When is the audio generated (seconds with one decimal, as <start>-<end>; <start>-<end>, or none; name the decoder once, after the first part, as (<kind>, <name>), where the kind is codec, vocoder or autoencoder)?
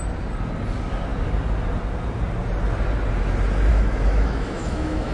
3.7-5.1 (autoencoder, DAC-VAE)